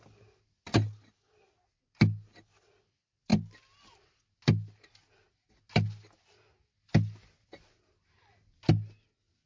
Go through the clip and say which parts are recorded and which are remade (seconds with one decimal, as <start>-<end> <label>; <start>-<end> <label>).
0.0-9.5 recorded